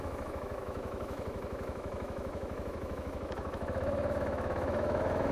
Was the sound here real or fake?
fake